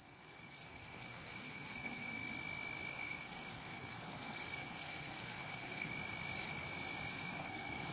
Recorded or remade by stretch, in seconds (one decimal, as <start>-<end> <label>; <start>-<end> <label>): 0.0-2.1 remade; 2.1-2.9 recorded; 2.9-5.9 remade; 5.9-7.1 recorded; 7.1-7.9 remade